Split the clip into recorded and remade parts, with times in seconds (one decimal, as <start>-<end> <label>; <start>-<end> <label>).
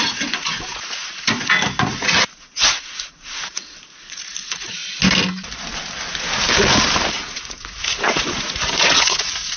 0.0-4.8 remade; 4.8-7.1 recorded; 7.1-9.6 remade